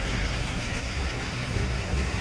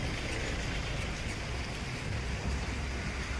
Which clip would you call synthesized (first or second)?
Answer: first